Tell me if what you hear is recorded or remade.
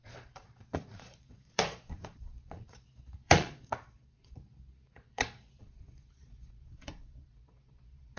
remade